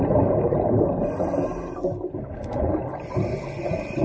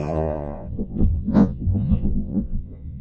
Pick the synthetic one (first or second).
second